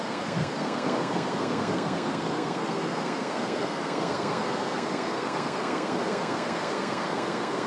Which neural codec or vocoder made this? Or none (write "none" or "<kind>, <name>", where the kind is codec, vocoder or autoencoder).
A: codec, SNAC